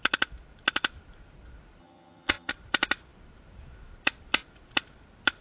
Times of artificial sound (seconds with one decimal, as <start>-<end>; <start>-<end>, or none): 1.8-2.5